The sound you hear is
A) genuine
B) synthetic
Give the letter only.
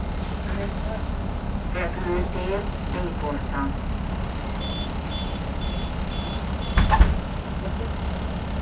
A